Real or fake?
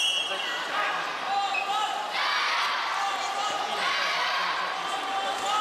real